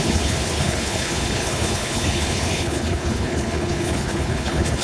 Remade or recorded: remade